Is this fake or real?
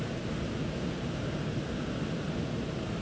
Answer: real